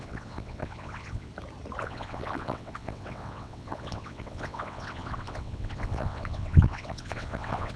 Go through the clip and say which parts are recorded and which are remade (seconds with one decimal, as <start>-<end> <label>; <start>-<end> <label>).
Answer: 0.0-1.3 remade; 1.3-1.8 recorded; 1.8-7.8 remade